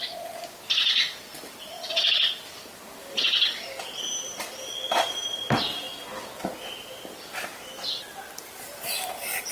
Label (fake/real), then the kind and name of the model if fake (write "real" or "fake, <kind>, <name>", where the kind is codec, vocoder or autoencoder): real